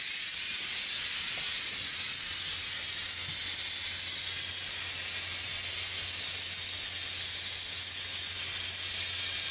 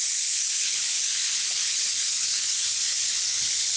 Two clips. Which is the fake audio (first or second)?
second